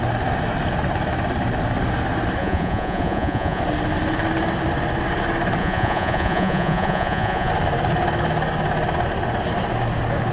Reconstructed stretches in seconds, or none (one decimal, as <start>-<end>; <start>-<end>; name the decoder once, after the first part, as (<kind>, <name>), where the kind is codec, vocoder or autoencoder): 2.4-3.6 (vocoder, Vocos); 5.6-7.5